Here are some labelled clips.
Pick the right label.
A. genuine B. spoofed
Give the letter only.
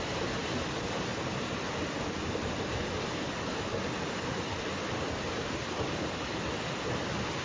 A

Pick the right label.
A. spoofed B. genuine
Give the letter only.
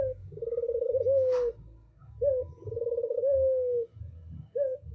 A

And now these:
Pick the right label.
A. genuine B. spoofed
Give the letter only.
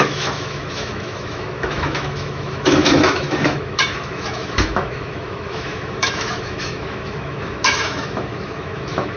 B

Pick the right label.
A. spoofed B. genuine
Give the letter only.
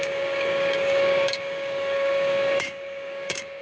A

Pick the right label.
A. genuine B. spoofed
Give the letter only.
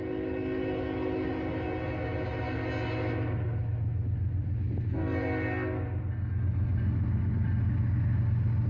A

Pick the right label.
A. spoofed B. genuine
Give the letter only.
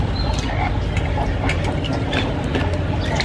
B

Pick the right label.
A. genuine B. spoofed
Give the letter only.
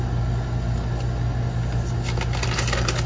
A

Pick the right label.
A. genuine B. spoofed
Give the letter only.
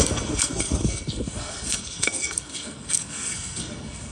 B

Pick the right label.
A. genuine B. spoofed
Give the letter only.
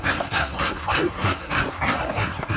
B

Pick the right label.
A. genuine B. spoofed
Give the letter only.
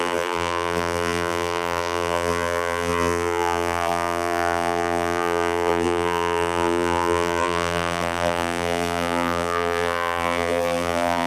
B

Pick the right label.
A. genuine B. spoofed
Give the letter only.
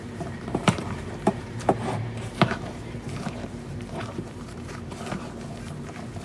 B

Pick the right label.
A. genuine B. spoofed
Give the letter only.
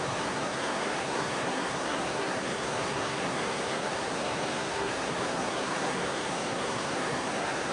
B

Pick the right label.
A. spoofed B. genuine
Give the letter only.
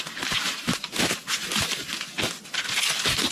B